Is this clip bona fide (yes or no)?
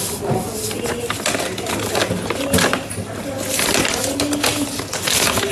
yes